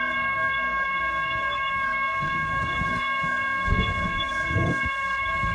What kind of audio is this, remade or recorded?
remade